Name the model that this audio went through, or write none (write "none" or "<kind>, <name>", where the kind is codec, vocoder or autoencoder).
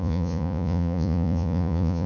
vocoder, Vocos